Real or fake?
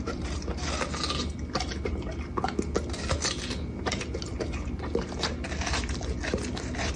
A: real